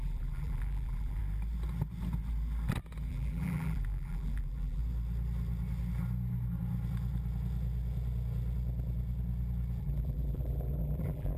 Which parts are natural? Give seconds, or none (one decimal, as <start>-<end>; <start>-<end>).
1.2-3.1; 4.8-9.8